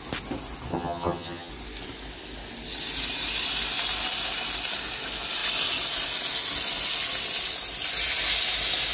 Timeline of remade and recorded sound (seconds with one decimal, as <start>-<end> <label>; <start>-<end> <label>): 0.0-0.7 recorded; 0.7-1.5 remade; 1.5-8.9 recorded